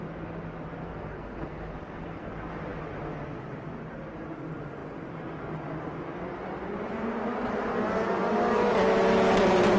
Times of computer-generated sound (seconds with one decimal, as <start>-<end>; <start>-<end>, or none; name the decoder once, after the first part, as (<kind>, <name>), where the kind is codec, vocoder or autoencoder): 0.8-2.3 (codec, SNAC)